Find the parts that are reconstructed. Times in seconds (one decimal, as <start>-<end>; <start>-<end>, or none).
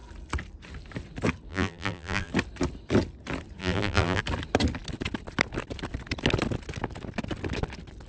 1.5-2.3; 3.6-4.2